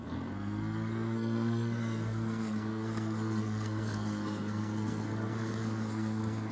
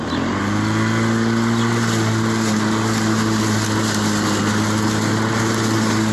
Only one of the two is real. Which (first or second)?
second